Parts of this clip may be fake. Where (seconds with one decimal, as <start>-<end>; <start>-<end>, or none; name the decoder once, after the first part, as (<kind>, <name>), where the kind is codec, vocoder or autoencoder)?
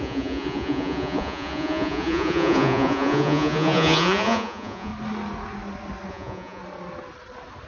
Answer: 0.0-4.9 (vocoder, Vocos); 6.1-6.6